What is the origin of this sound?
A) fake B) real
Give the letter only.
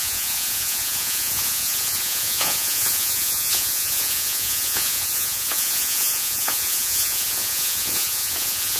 A